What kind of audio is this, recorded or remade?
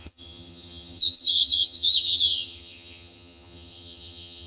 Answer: remade